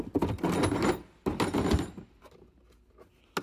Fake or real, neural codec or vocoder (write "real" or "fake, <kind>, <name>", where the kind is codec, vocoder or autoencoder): real